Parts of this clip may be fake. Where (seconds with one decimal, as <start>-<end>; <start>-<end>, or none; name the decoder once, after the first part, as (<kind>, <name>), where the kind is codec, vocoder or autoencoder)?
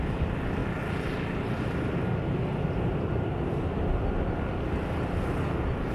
none